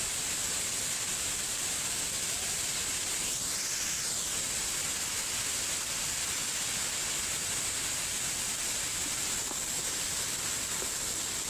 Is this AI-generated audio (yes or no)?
no